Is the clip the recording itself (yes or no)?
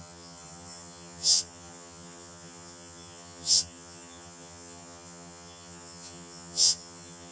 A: no